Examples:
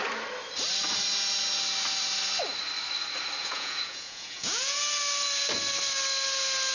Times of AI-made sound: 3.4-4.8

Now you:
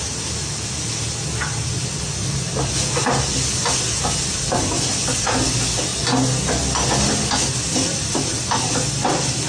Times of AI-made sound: none

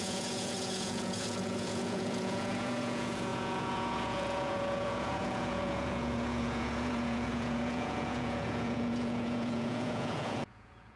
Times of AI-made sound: 0.0-11.0

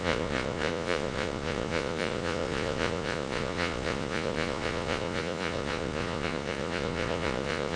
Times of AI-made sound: 0.0-7.8

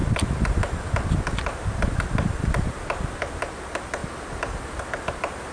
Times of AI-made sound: none

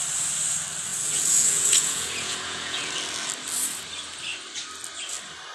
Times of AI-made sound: 0.9-2.9